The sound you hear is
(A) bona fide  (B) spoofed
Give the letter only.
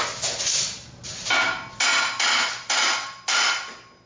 A